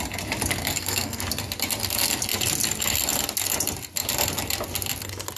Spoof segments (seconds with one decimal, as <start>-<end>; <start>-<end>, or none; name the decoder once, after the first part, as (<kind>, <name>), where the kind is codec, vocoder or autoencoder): 0.6-1.2 (codec, SNAC)